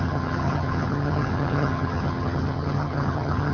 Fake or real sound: fake